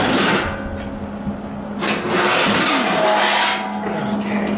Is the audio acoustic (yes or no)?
yes